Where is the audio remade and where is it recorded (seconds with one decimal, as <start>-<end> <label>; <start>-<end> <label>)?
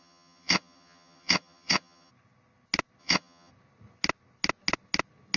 0.0-2.1 remade; 2.1-3.0 recorded; 3.0-3.5 remade; 3.5-5.4 recorded